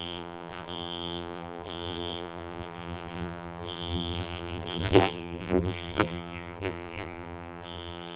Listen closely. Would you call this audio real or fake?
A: fake